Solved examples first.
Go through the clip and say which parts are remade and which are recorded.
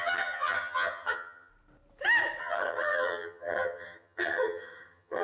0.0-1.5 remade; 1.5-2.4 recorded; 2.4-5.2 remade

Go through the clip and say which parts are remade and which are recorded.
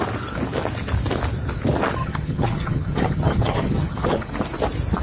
0.0-2.0 recorded; 2.0-4.3 remade; 4.3-5.0 recorded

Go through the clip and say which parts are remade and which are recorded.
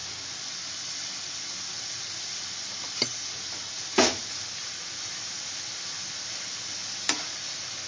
0.0-7.9 recorded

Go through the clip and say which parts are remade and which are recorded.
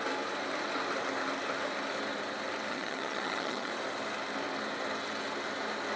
0.0-2.7 recorded; 2.7-3.7 remade; 3.7-6.0 recorded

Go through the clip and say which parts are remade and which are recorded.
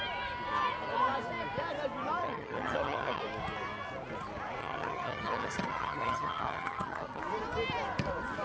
0.0-2.2 recorded; 2.2-3.2 remade; 3.2-4.6 recorded; 4.6-7.2 remade; 7.2-8.4 recorded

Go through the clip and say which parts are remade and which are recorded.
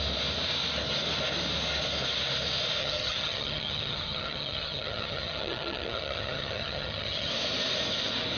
0.0-2.8 recorded; 2.8-7.3 remade; 7.3-8.4 recorded